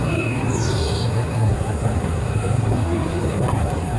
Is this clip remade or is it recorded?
remade